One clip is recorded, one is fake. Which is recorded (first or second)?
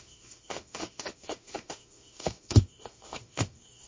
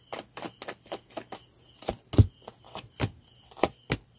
second